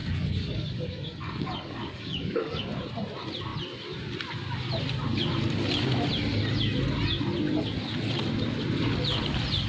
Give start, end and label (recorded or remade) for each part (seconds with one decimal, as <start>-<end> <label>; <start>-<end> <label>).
0.0-2.6 remade; 2.6-9.7 recorded